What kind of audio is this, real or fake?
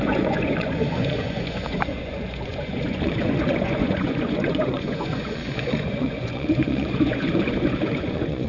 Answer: fake